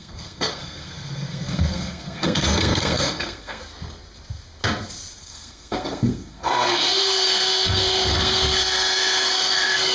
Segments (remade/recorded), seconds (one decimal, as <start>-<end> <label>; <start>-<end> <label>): 0.0-3.6 remade; 3.6-5.2 recorded; 5.2-9.9 remade